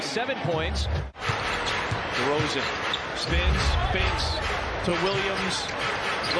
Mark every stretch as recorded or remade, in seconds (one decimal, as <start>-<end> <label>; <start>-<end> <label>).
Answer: 0.0-3.8 recorded; 3.8-4.4 remade; 4.4-6.4 recorded